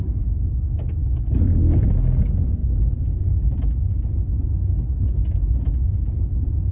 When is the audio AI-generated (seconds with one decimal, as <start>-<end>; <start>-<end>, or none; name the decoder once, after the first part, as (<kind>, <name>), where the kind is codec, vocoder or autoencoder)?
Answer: none